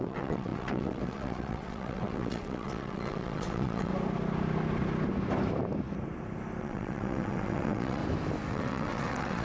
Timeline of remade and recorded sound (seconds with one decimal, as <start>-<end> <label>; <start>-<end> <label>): 0.0-3.9 remade; 3.9-6.6 recorded; 6.6-8.0 remade; 8.0-8.5 recorded; 8.5-9.4 remade

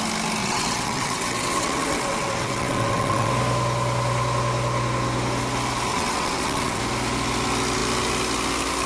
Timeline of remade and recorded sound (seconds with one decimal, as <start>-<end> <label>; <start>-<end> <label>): 0.0-0.4 recorded; 0.4-3.3 remade; 3.3-5.9 recorded; 5.9-6.8 remade; 6.8-8.9 recorded

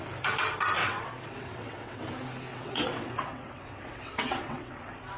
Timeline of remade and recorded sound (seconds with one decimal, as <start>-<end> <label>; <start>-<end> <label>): 0.0-0.8 recorded; 0.8-2.0 remade; 2.0-2.5 recorded; 2.5-4.7 remade; 4.7-5.2 recorded

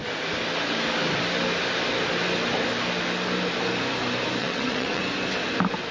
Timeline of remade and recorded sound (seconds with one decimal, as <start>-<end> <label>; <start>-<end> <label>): 0.0-4.4 recorded; 4.4-5.0 remade; 5.0-5.9 recorded

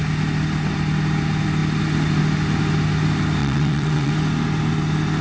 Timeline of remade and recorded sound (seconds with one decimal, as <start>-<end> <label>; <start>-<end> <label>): 0.0-3.4 recorded; 3.4-4.1 remade; 4.1-5.2 recorded

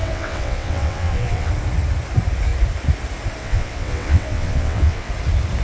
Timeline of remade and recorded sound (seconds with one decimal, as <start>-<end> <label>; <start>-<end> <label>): 0.0-1.5 remade; 1.5-3.4 recorded; 3.4-5.1 remade; 5.1-5.6 recorded

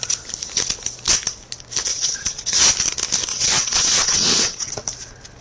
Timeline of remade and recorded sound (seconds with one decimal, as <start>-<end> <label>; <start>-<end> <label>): 0.0-1.9 recorded; 1.9-2.6 remade; 2.6-3.3 recorded; 3.3-4.7 remade; 4.7-5.4 recorded